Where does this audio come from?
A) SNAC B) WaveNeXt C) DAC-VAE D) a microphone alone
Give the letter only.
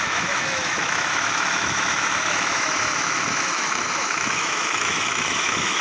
C